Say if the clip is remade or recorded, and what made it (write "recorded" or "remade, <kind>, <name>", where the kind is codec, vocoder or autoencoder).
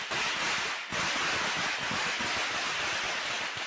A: recorded